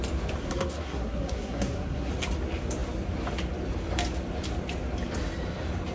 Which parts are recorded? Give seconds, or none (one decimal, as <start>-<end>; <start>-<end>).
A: 0.0-0.4; 2.1-5.9

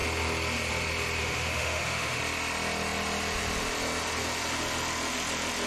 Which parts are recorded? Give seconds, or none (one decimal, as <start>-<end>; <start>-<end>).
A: 0.0-1.2; 2.2-5.7

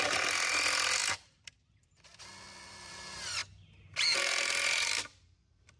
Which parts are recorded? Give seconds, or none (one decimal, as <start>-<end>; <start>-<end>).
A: 0.0-5.8

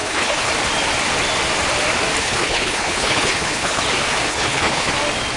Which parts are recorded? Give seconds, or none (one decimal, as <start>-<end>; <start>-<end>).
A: 0.5-2.2; 3.8-4.3; 4.9-5.4